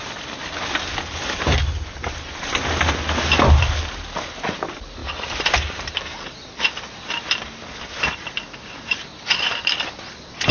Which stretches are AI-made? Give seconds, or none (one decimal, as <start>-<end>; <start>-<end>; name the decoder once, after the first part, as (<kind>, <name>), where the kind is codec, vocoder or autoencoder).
none